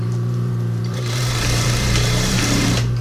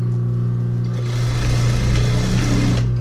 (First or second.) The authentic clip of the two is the second